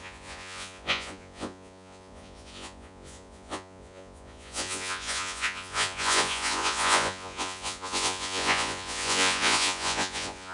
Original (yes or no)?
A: no